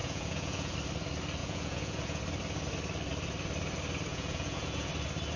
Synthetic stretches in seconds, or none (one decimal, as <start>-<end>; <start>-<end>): 0.0-0.7; 1.4-2.2; 4.1-4.9

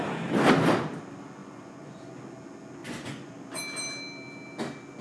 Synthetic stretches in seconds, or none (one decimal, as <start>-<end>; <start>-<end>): 1.4-2.1; 2.8-3.6